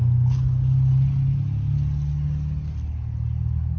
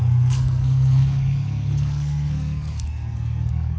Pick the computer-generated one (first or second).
second